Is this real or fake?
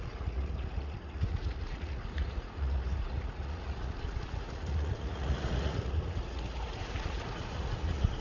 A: fake